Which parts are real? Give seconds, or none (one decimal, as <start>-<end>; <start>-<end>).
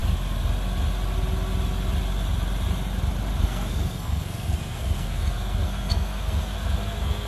0.0-3.4